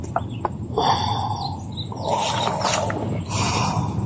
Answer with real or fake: real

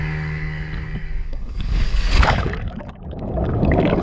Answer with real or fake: fake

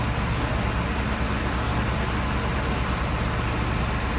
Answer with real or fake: real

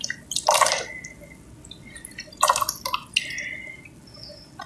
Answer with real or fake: real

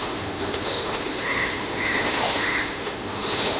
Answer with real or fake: fake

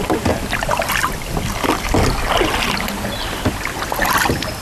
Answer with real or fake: real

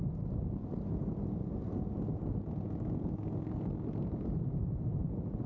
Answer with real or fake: real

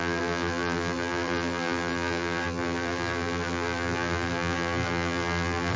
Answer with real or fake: fake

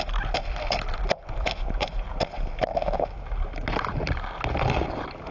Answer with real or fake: real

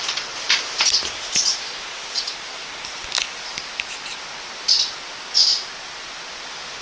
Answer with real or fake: real